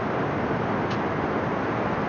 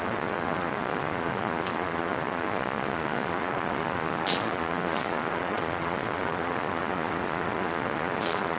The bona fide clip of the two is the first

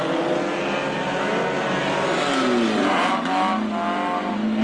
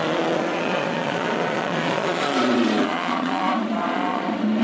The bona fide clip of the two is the first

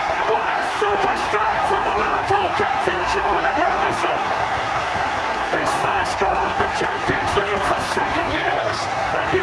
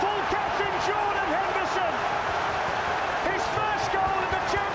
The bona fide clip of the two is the second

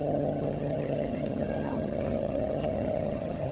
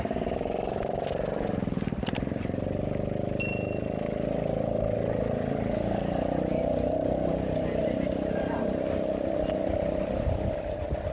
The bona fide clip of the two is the second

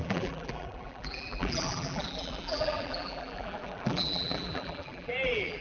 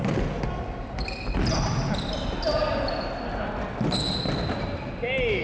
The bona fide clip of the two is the second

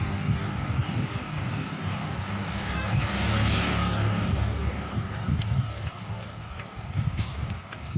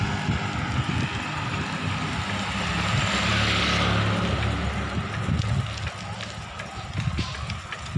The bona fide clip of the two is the second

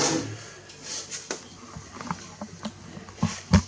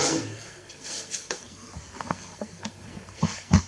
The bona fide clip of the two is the first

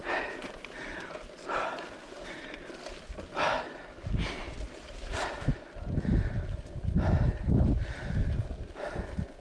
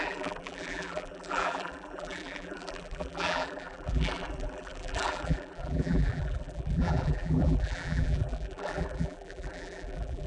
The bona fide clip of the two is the first